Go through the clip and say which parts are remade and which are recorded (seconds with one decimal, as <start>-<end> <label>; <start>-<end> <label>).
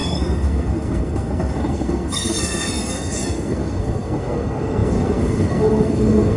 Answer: 0.0-6.4 remade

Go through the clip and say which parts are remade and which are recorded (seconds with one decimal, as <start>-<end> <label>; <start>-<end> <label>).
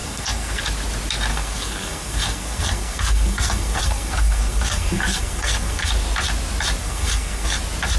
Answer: 0.0-0.6 remade; 0.6-1.3 recorded; 1.3-5.9 remade; 5.9-6.8 recorded; 6.8-7.6 remade; 7.6-8.0 recorded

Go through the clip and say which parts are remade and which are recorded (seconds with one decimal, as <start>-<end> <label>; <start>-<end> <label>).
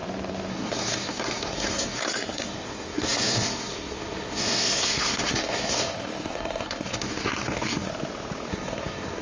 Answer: 0.0-0.5 recorded; 0.5-7.9 remade; 7.9-8.5 recorded; 8.5-9.2 remade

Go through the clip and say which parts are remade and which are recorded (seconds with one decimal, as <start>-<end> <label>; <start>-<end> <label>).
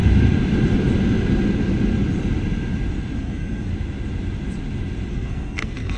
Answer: 0.0-3.2 recorded; 3.2-3.7 remade; 3.7-5.1 recorded; 5.1-6.0 remade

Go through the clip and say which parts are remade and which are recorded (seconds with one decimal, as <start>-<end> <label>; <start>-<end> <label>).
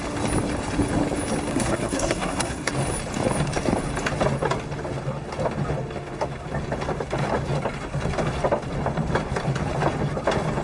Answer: 0.0-1.5 recorded; 1.5-2.7 remade; 2.7-10.6 recorded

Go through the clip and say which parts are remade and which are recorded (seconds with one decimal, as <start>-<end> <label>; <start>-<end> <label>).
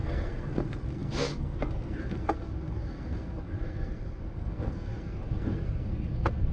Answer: 0.0-6.5 remade